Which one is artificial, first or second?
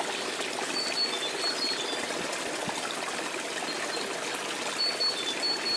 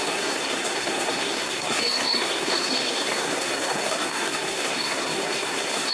second